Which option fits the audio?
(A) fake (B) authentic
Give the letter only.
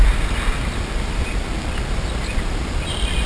B